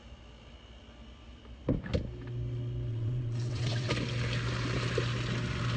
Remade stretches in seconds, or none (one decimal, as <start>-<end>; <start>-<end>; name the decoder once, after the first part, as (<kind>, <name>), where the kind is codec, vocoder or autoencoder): 2.9-3.9 (vocoder, WaveNeXt)